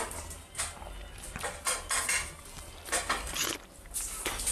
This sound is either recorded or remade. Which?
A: recorded